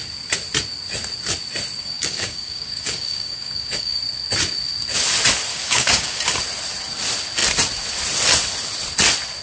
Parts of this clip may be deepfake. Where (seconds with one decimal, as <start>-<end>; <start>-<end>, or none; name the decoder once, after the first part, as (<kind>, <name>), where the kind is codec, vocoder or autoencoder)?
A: 1.8-4.0 (codec, DAC); 5.5-6.2